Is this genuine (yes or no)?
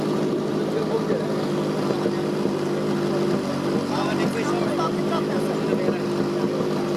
yes